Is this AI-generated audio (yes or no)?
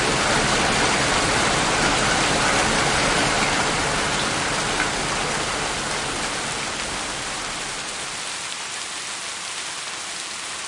no